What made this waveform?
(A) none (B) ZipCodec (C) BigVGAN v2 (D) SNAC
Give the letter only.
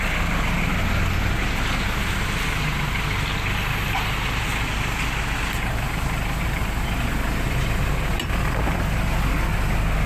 A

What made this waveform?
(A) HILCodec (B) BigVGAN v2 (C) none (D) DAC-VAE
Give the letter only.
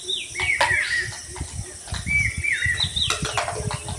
C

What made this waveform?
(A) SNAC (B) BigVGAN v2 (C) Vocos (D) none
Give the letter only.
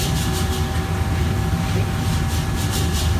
D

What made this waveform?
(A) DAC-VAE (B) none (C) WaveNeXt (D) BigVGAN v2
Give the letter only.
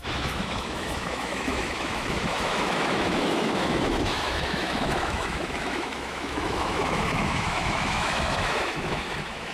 A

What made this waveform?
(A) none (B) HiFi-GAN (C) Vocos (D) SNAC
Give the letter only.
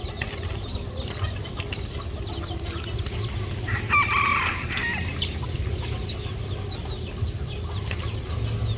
A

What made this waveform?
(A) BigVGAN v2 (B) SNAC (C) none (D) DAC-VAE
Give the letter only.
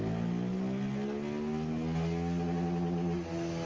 C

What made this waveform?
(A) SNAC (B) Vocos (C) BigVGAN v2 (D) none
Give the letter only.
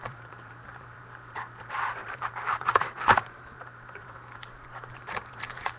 C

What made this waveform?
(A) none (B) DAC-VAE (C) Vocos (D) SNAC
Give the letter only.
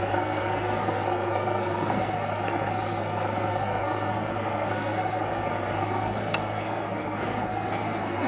D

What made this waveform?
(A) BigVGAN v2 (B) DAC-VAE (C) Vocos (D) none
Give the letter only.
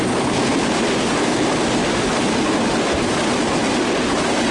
D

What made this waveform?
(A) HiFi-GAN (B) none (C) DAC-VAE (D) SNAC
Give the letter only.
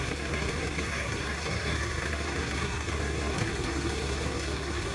D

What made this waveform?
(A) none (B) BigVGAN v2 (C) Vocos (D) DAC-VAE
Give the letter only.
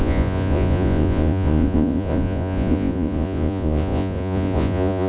C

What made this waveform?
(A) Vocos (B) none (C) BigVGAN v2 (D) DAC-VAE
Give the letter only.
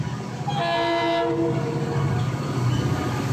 B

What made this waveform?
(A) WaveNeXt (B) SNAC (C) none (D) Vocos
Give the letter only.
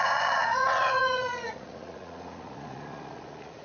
D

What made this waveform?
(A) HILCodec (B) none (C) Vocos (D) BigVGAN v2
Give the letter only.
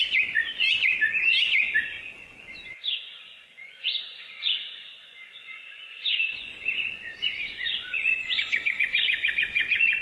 C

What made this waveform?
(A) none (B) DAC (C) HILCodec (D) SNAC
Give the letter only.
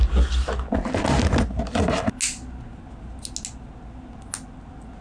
A